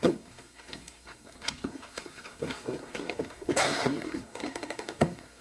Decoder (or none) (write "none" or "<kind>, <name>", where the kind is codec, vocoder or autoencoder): codec, SNAC